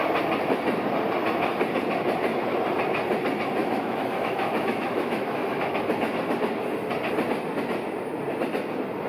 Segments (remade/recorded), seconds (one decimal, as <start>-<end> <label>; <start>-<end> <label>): 0.0-3.6 recorded; 3.6-5.8 remade; 5.8-9.1 recorded